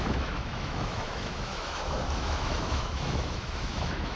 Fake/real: fake